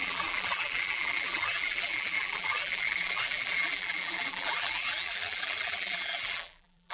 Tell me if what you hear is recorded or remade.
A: remade